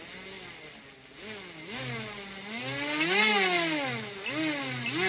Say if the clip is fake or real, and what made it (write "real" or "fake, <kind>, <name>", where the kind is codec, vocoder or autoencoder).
real